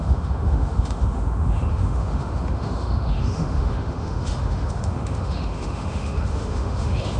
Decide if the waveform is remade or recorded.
remade